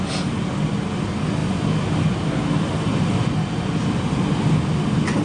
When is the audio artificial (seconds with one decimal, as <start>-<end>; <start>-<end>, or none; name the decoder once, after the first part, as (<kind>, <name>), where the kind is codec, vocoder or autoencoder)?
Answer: none